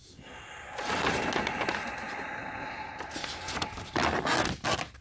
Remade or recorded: recorded